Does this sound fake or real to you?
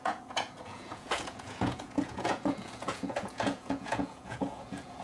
fake